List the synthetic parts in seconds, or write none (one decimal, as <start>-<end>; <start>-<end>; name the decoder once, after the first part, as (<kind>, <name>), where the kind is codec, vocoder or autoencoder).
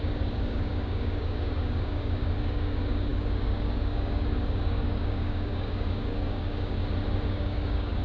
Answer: 0.0-6.8 (codec, DAC); 7.3-8.0